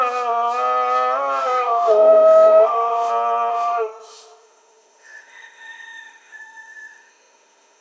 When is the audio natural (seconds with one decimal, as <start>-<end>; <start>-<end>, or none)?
0.0-1.4; 3.1-3.5